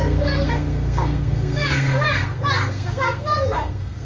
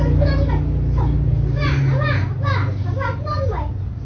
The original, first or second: second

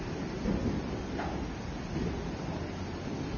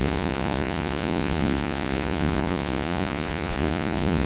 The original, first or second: first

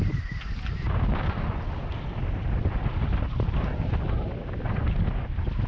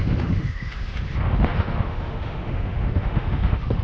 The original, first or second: first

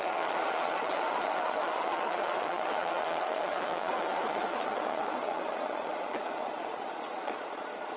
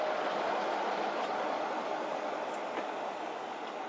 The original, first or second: second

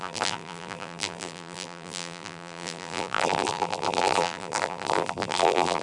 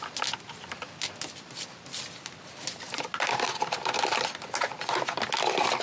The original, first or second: second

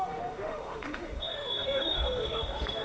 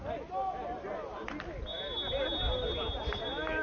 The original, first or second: second